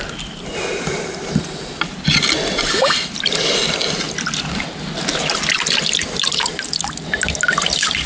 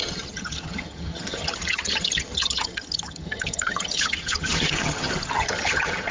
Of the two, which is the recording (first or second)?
first